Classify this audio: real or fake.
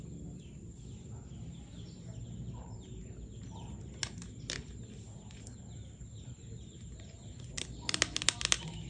real